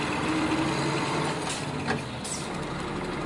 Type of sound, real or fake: real